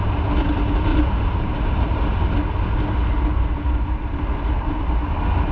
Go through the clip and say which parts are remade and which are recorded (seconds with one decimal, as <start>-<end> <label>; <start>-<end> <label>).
0.0-0.9 recorded; 0.9-2.0 remade; 2.0-3.0 recorded; 3.0-4.9 remade; 4.9-5.5 recorded